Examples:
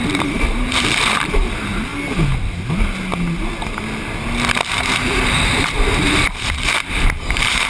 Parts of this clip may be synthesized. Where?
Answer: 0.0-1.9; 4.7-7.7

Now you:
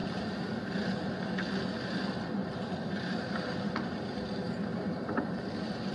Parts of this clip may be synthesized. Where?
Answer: 2.4-3.4; 4.7-5.4

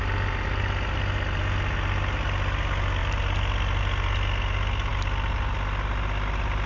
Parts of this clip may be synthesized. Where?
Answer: 3.0-3.8

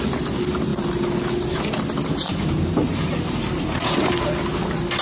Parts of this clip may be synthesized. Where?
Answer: 2.0-4.1